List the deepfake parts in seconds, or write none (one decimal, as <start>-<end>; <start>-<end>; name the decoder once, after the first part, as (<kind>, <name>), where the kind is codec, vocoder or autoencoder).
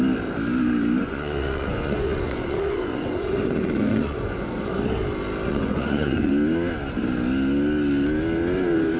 1.0-4.7 (vocoder, Vocos); 5.5-6.3